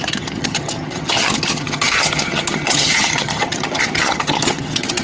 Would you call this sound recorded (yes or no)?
no